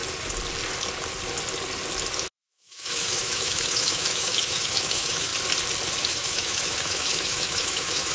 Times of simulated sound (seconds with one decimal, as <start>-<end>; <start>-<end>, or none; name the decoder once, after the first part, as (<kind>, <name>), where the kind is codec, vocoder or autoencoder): 2.3-5.3 (autoencoder, DAC-VAE); 6.0-8.1